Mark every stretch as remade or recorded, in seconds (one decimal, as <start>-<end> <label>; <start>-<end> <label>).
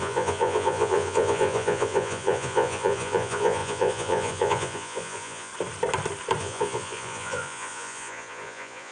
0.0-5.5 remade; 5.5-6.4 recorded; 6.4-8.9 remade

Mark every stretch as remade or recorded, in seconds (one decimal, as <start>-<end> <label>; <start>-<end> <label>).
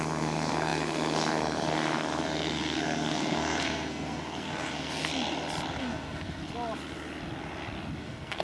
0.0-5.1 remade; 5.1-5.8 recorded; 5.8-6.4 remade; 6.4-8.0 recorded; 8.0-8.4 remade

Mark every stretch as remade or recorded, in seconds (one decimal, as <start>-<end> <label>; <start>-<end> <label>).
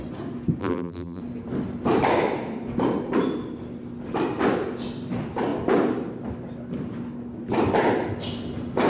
0.0-0.6 recorded; 0.6-1.2 remade; 1.2-8.9 recorded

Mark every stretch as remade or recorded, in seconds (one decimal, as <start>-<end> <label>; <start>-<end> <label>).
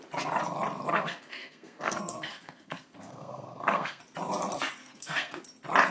0.0-0.9 recorded; 0.9-4.0 remade; 4.0-4.8 recorded; 4.8-5.4 remade; 5.4-5.9 recorded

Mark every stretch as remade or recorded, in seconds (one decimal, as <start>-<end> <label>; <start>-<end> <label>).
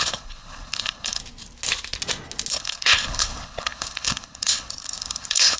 0.0-1.2 remade; 1.2-2.5 recorded; 2.5-5.6 remade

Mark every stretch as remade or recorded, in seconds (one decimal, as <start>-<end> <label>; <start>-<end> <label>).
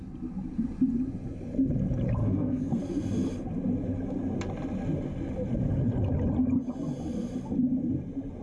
0.0-2.2 recorded; 2.2-2.8 remade; 2.8-8.4 recorded